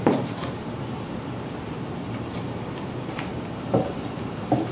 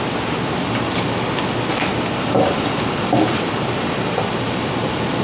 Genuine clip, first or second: second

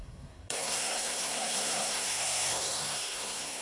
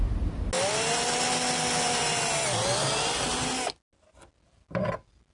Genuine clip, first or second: second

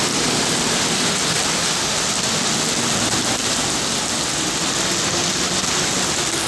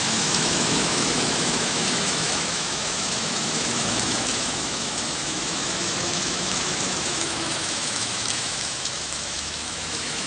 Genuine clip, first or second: first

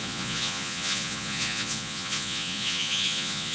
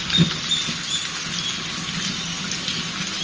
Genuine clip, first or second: second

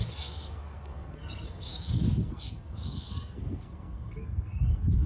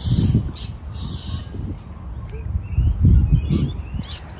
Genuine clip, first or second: second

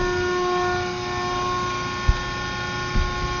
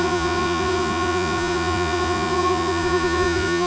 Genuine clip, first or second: first